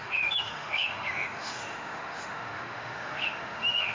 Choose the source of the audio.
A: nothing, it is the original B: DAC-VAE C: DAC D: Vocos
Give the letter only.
B